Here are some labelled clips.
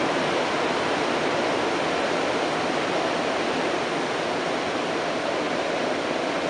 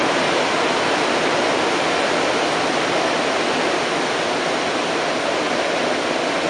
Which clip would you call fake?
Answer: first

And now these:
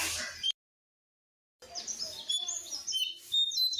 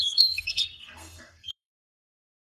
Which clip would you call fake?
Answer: second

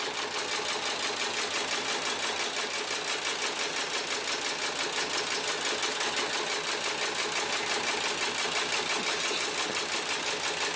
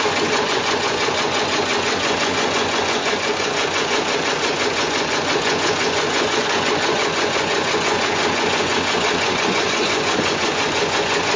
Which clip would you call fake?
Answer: second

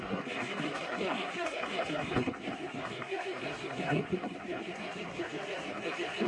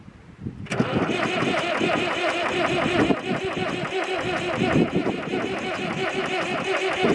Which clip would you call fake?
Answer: first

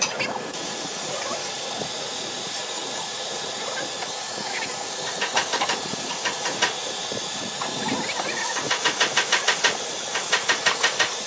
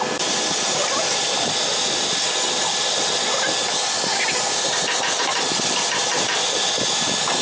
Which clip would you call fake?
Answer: first